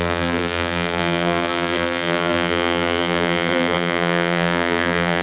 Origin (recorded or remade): remade